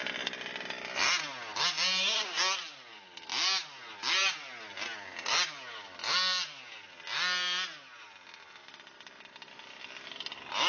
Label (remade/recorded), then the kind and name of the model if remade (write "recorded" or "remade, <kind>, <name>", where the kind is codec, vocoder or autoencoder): recorded